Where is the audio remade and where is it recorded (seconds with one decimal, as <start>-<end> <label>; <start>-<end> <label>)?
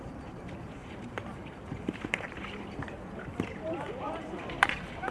0.0-5.1 remade